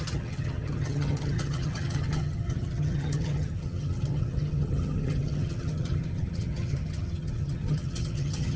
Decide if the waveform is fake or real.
fake